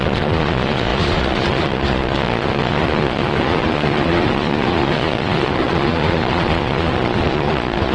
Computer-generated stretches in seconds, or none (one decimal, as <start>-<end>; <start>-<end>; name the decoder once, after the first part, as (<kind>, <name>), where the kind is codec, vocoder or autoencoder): 0.0-7.9 (vocoder, Vocos)